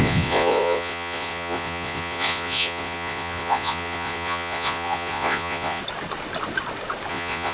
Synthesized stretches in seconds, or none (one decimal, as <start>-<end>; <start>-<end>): 0.0-5.8; 7.1-7.5